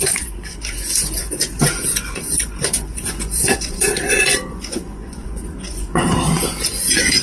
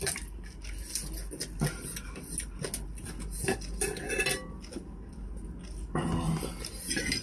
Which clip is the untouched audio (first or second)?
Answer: second